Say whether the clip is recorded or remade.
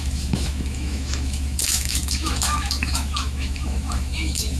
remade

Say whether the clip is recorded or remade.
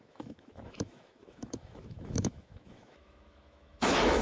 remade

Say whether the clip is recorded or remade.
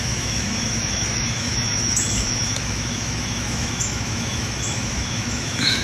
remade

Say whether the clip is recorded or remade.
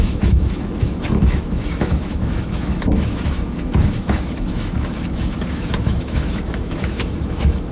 remade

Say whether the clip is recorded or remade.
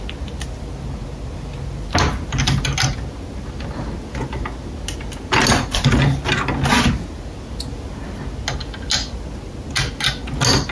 recorded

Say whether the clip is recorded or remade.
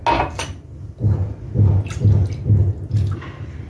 recorded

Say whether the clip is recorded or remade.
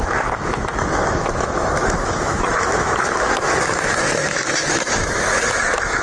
remade